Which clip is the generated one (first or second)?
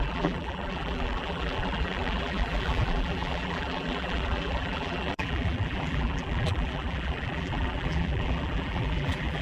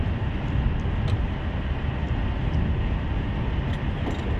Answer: first